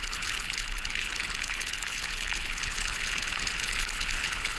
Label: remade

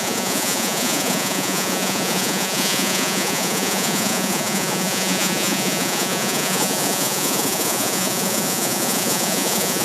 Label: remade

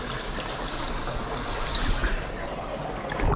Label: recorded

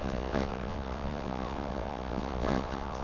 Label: remade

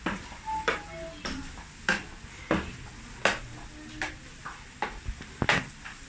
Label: recorded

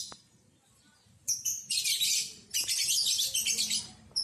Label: remade